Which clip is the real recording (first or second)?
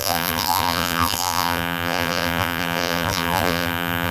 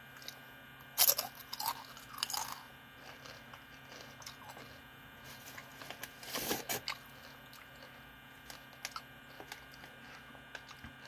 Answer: second